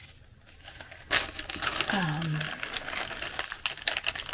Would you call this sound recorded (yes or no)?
yes